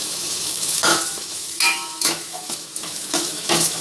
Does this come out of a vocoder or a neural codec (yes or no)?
yes